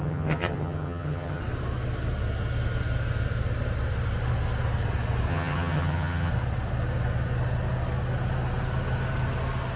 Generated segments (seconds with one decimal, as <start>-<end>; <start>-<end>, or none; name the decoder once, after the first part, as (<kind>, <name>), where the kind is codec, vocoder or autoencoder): 0.0-1.4 (vocoder, HiFi-GAN); 5.3-6.3